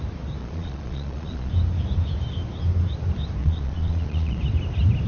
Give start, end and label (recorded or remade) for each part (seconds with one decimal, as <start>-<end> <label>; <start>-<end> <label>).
0.0-0.4 recorded; 0.4-1.5 remade; 1.5-3.4 recorded; 3.4-4.4 remade; 4.4-5.1 recorded